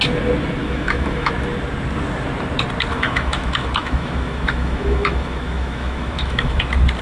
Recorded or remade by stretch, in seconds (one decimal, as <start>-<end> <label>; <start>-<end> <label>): 0.0-0.6 recorded; 0.6-1.3 remade; 1.3-2.9 recorded; 2.9-6.6 remade; 6.6-7.0 recorded